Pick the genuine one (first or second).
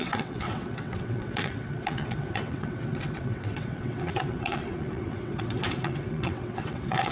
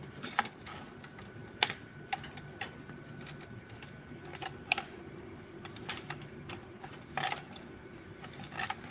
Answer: second